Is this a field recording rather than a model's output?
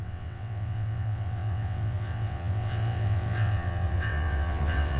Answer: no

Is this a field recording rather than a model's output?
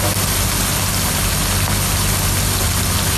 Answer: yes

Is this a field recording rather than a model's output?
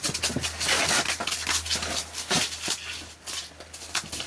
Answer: yes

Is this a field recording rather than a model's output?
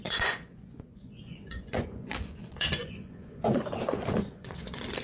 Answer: no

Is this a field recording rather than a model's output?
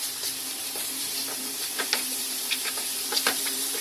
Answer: no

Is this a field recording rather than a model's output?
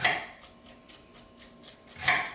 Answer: yes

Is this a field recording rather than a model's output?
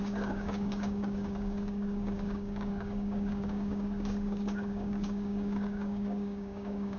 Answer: no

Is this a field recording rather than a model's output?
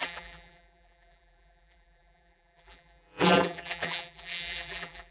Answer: no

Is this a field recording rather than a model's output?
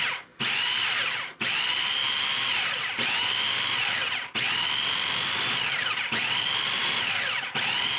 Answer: yes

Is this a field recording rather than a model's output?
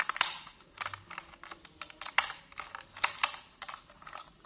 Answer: yes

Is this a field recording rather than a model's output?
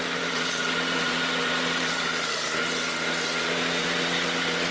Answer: no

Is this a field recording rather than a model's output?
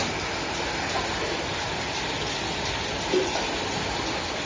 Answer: yes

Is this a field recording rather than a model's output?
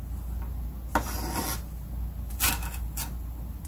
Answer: yes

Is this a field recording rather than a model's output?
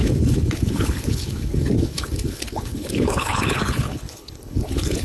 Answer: no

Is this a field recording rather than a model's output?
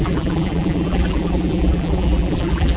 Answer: no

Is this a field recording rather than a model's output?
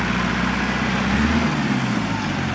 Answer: yes